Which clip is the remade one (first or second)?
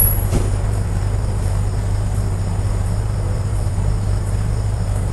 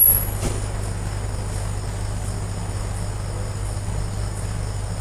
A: first